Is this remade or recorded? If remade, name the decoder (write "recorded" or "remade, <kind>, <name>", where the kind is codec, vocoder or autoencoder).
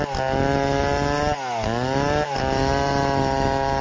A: recorded